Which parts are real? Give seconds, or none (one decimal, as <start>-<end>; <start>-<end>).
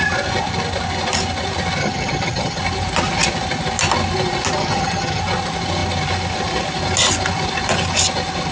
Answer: 0.0-1.8; 2.6-4.6; 5.2-8.5